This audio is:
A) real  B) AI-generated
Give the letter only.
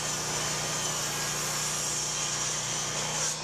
A